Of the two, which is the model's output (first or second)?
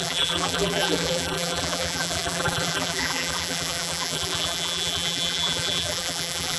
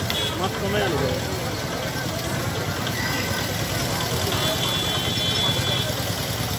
first